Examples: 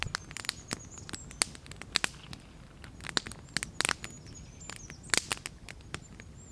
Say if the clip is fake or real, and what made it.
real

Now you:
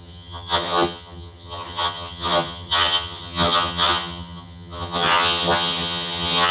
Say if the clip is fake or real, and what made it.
fake, vocoder, HiFi-GAN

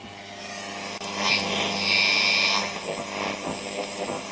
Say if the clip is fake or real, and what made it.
real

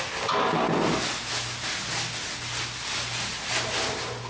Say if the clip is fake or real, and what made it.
real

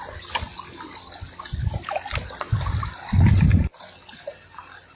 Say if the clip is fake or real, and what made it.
real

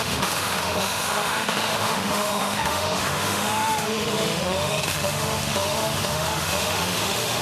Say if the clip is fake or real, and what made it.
fake, autoencoder, DAC-VAE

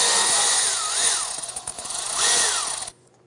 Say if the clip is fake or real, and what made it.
fake, vocoder, Vocos